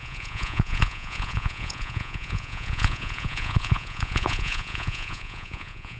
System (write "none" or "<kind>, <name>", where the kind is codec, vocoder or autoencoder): vocoder, Vocos